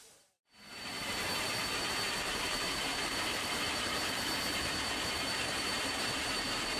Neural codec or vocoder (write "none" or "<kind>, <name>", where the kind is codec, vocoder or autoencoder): vocoder, BigVGAN v2